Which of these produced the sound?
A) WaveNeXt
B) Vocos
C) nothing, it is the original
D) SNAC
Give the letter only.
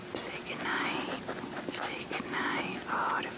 C